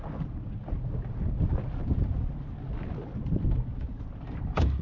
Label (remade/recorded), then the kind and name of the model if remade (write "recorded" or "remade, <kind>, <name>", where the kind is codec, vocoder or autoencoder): recorded